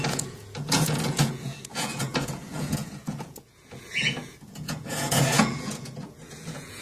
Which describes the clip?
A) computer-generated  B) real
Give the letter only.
A